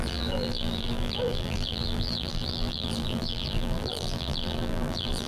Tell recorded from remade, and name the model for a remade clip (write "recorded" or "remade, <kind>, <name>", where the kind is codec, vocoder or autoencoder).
remade, vocoder, BigVGAN v2